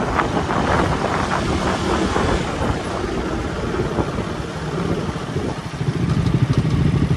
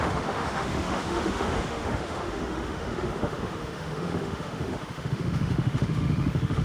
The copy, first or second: second